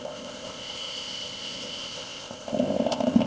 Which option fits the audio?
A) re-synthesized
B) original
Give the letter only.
A